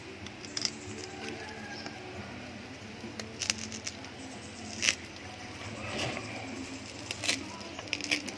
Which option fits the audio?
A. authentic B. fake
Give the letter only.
A